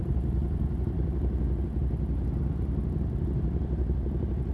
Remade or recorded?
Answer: recorded